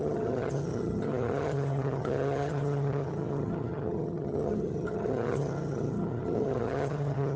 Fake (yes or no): yes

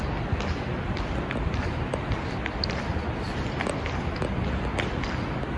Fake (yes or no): no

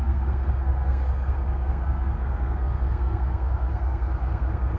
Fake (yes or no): yes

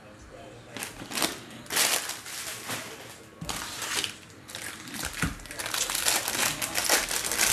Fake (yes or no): no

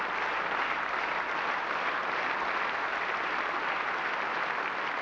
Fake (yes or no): no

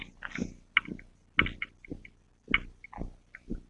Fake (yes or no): no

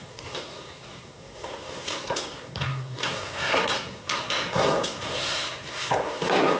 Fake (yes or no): yes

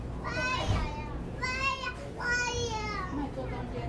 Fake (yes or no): no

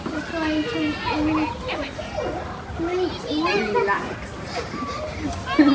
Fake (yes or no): no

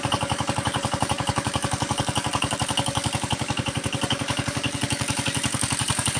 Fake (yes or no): yes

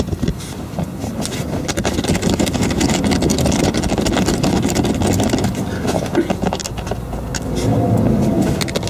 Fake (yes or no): no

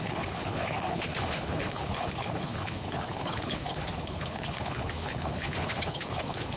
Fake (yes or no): yes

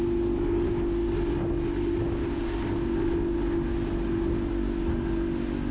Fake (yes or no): no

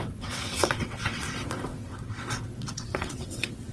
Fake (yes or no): yes